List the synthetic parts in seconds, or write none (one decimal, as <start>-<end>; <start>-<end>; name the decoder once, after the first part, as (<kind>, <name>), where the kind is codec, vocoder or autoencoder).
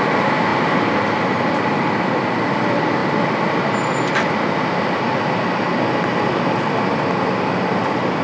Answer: none